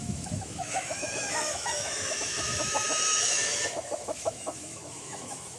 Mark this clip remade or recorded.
remade